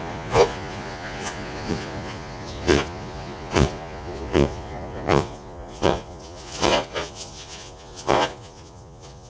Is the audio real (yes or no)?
no